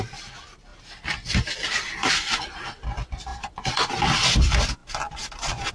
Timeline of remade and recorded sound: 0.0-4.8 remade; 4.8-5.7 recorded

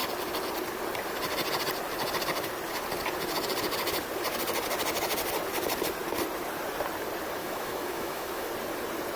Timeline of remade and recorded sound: 0.0-7.4 recorded; 7.4-8.5 remade; 8.5-9.2 recorded

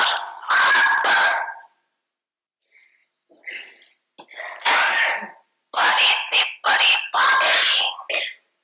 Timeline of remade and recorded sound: 0.0-8.6 recorded

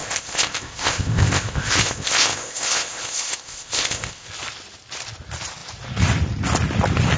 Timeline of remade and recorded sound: 0.0-4.3 remade; 4.3-7.2 recorded